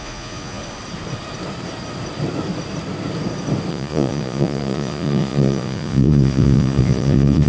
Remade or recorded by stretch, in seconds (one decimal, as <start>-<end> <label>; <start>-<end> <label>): 0.0-0.6 remade; 0.6-3.7 recorded; 3.7-7.5 remade